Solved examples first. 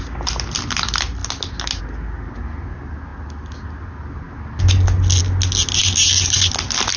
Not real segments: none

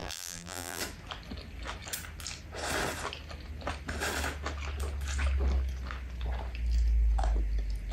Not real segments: 0.0-0.8

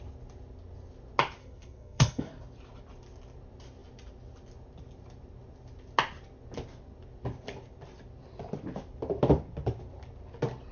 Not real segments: 1.4-2.3

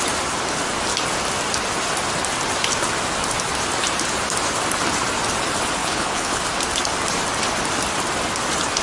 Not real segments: 5.8-6.4

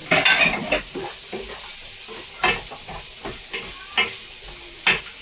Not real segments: none

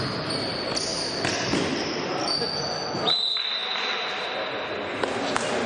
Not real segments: 0.5-2.1

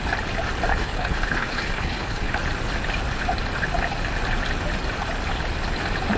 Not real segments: 0.7-2.4

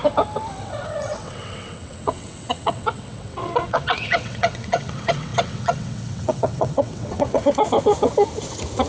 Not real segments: 0.6-7.4